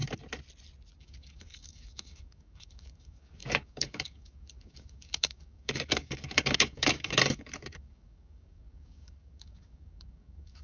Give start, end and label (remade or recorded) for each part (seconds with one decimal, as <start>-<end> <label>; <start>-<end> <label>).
0.0-1.0 recorded; 1.0-10.6 remade